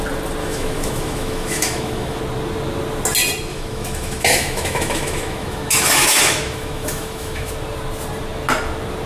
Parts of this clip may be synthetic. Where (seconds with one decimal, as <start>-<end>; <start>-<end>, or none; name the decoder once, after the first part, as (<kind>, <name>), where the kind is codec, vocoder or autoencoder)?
0.4-2.2 (autoencoder, DAC-VAE); 3.5-7.5